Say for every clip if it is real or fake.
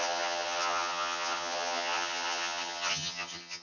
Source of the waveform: fake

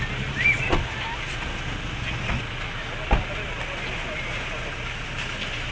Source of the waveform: real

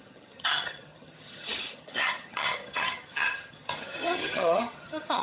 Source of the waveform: fake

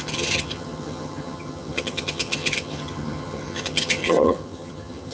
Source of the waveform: fake